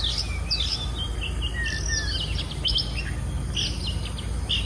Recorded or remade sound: recorded